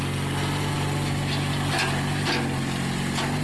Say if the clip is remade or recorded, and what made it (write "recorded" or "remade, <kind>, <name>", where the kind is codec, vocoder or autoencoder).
recorded